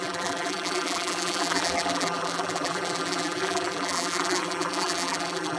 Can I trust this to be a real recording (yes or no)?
no